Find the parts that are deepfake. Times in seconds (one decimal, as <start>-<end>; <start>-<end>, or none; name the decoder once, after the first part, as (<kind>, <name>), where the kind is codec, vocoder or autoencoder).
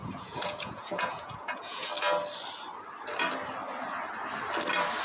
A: 0.0-1.9 (vocoder, Vocos)